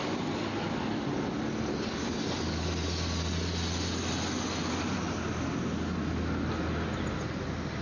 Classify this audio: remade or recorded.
recorded